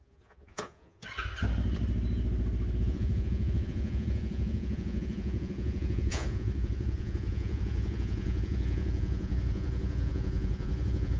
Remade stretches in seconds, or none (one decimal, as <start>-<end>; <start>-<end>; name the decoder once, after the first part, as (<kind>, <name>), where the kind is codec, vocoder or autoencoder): 0.0-1.0 (vocoder, Vocos); 2.8-11.2